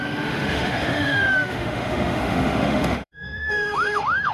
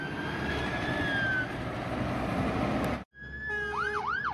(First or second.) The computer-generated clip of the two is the first